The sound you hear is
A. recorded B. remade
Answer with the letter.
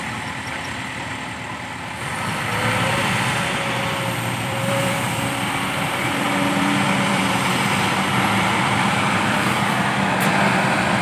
B